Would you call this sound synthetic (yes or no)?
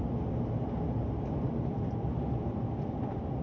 no